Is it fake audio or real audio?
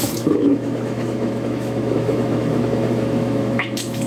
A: fake